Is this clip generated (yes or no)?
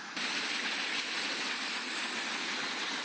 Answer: no